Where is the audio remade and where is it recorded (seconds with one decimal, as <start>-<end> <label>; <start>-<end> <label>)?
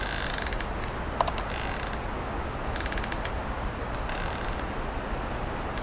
0.0-5.8 recorded